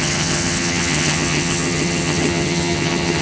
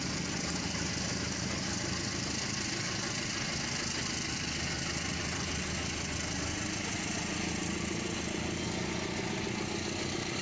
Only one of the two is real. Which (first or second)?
second